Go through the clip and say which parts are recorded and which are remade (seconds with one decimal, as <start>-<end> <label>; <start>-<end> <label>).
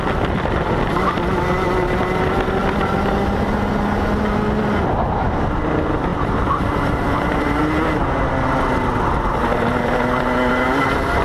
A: 0.0-6.1 recorded; 6.1-7.7 remade; 7.7-11.2 recorded